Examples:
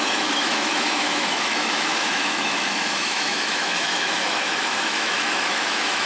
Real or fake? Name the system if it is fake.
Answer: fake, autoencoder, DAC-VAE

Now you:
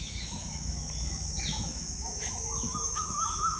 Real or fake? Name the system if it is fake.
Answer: fake, autoencoder, DAC-VAE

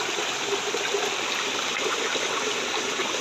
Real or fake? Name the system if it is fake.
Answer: real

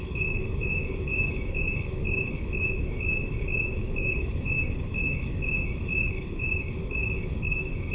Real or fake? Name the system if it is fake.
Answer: fake, autoencoder, DAC-VAE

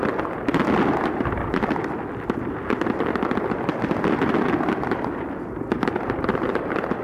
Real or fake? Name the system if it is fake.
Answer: real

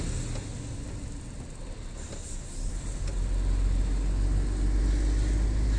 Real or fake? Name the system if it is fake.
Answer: real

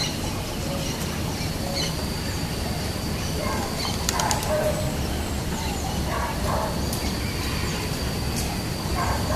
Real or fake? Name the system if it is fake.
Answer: real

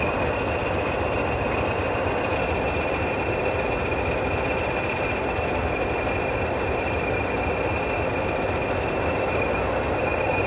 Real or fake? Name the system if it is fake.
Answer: real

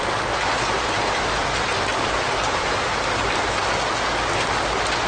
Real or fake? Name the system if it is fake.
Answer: real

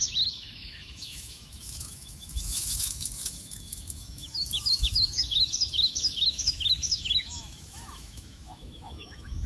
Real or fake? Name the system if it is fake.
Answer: fake, autoencoder, DAC-VAE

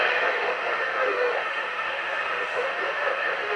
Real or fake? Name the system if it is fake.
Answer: fake, autoencoder, DAC-VAE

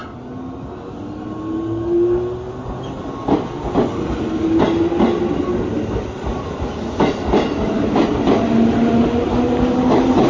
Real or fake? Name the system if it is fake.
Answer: real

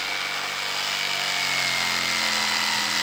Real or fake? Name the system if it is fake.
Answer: real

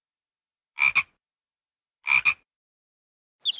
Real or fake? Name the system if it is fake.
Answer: real